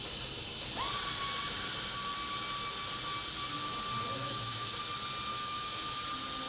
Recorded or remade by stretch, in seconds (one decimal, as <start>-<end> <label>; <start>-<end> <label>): 0.0-4.2 recorded; 4.2-4.8 remade; 4.8-5.3 recorded; 5.3-6.0 remade; 6.0-6.5 recorded